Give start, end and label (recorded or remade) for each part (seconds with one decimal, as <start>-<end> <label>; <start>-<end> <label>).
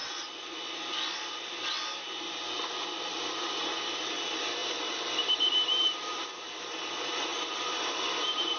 0.0-3.3 recorded; 3.3-8.6 remade